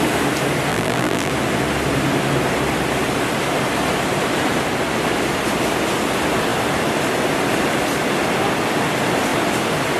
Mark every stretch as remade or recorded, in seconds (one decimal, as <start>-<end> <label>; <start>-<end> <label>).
0.0-0.7 recorded; 0.7-1.3 remade; 1.3-10.0 recorded